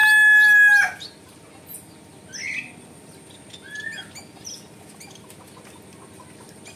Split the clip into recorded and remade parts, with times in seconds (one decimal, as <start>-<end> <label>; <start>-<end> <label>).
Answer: 0.0-6.8 recorded